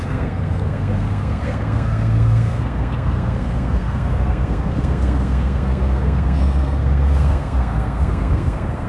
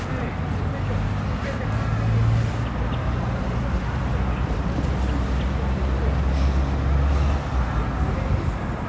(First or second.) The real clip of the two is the second